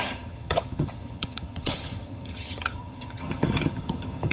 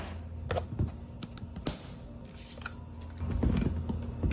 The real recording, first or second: second